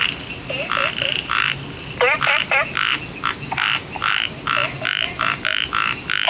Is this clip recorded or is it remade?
recorded